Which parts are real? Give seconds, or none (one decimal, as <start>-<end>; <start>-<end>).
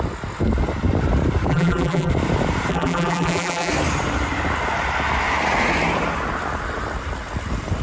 0.0-1.5; 2.1-2.7; 3.7-7.8